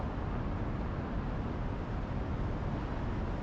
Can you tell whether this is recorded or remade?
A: recorded